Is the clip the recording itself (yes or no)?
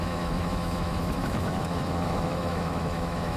no